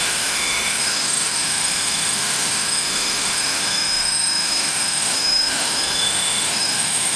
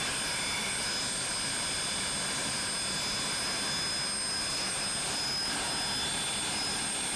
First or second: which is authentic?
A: second